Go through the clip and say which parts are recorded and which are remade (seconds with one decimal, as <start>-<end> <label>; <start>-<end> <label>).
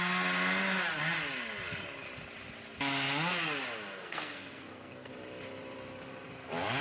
0.0-3.9 recorded; 3.9-5.1 remade; 5.1-6.8 recorded